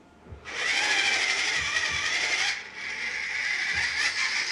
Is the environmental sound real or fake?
fake